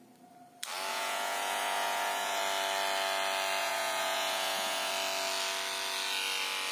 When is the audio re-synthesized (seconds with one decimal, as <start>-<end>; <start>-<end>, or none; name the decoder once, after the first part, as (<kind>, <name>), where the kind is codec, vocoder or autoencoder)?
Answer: 0.9-2.4 (vocoder, Vocos); 3.6-4.9